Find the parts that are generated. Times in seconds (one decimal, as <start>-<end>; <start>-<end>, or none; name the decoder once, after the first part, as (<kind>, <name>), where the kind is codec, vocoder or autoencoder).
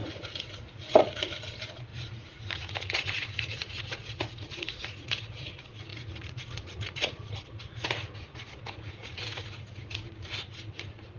0.0-11.2 (vocoder, Vocos)